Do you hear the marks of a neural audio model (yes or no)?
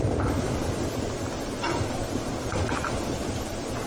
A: no